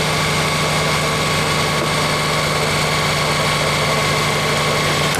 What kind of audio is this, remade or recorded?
recorded